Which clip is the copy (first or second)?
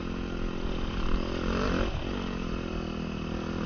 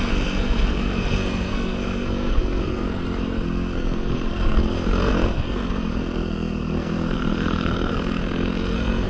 second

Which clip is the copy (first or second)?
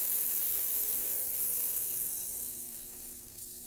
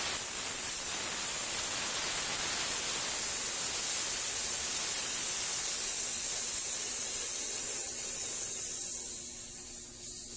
first